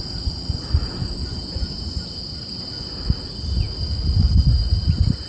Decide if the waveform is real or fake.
real